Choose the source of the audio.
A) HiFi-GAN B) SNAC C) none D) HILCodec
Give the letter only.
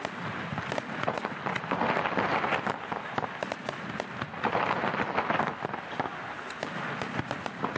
C